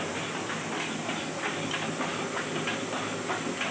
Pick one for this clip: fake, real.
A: real